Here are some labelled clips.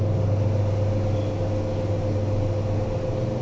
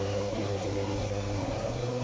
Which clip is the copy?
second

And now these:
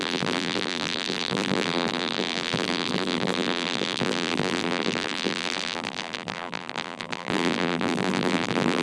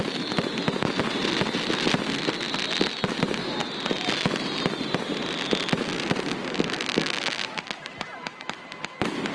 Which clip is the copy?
first